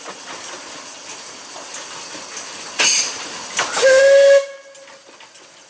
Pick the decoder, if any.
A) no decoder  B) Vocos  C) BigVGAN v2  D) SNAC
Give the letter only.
A